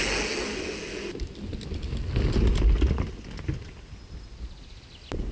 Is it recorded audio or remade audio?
recorded